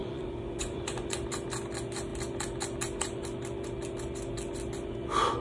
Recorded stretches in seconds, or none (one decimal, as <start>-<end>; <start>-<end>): 1.2-5.4